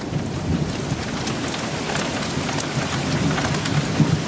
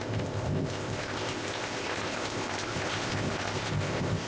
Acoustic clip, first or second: first